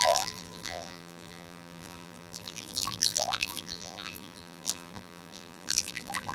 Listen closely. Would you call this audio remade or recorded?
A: remade